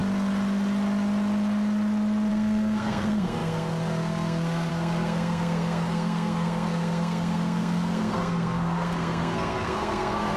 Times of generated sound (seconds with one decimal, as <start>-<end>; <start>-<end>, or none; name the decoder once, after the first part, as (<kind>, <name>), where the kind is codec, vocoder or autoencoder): 2.3-10.4 (codec, SNAC)